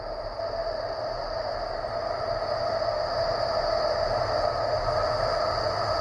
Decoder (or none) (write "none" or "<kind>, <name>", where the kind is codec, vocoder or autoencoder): none